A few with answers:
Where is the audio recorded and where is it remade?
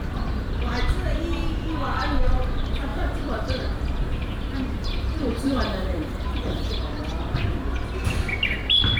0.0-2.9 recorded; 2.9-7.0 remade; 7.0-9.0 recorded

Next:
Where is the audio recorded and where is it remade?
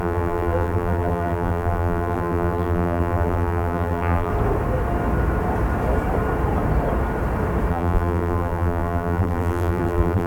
0.0-4.3 remade; 4.3-7.7 recorded; 7.7-10.3 remade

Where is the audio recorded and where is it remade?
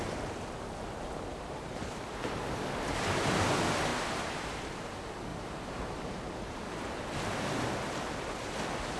0.0-1.3 recorded; 1.3-1.8 remade; 1.8-3.9 recorded; 3.9-4.7 remade; 4.7-5.3 recorded; 5.3-7.4 remade; 7.4-9.0 recorded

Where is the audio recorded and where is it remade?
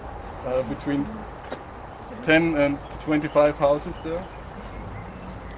0.0-5.0 recorded; 5.0-5.6 remade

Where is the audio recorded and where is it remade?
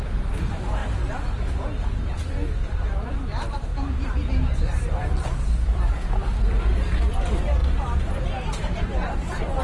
0.0-0.8 remade; 0.8-2.6 recorded; 2.6-7.6 remade; 7.6-8.8 recorded; 8.8-9.6 remade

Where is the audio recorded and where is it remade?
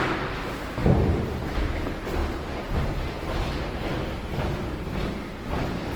0.0-0.8 recorded; 0.8-1.5 remade; 1.5-2.2 recorded; 2.2-5.1 remade; 5.1-6.0 recorded